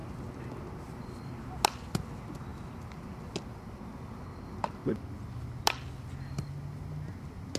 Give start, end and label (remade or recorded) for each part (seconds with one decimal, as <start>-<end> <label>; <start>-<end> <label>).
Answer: 0.0-0.5 remade; 0.5-7.6 recorded